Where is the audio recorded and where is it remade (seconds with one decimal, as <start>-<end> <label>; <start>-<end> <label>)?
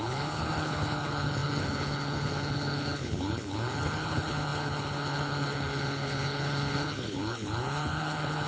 0.0-8.5 remade